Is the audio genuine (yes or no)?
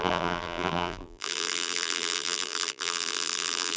no